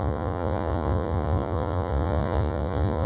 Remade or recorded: remade